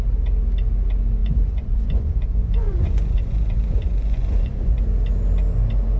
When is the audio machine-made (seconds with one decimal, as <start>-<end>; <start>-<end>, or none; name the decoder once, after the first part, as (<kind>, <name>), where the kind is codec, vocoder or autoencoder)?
1.2-4.8 (vocoder, Vocos)